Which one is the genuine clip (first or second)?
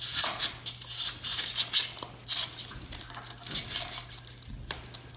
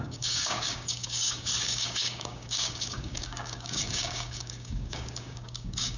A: first